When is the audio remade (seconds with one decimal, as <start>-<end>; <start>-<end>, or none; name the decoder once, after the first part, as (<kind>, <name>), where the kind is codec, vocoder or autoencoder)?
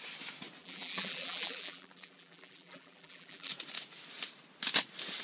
0.6-3.5 (vocoder, BigVGAN v2)